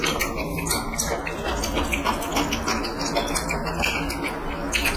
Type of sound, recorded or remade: recorded